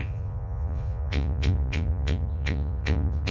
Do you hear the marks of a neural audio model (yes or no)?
yes